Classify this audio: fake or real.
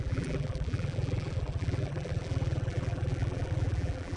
fake